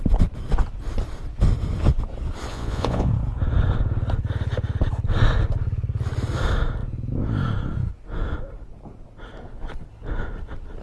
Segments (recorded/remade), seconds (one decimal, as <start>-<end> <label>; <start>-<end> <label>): 0.0-2.5 recorded; 2.5-3.1 remade; 3.1-10.8 recorded